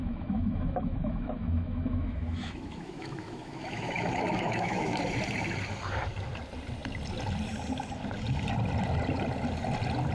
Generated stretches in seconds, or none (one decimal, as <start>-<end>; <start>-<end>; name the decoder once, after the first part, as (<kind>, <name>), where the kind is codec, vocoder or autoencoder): 0.0-5.0 (autoencoder, DAC-VAE)